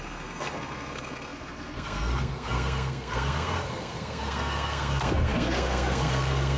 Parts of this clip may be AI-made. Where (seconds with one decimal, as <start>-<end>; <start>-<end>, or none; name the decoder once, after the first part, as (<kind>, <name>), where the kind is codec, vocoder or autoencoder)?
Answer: 0.0-6.6 (codec, SNAC)